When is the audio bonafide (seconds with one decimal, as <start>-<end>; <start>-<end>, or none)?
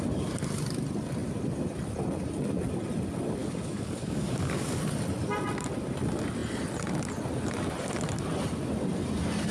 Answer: 0.0-3.4; 4.8-9.5